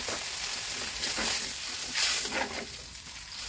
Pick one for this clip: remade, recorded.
recorded